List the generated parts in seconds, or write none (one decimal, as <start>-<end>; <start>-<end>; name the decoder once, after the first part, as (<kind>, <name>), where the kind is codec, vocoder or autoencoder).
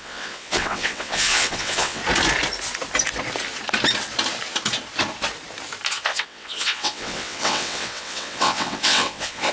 0.0-2.0 (vocoder, WaveNeXt); 5.9-9.5